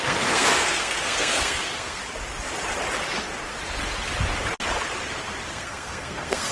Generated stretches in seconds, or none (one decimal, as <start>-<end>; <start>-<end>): 0.0-2.0; 5.5-6.5